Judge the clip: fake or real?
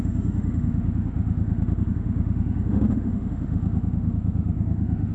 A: fake